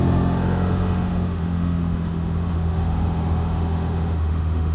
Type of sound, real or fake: fake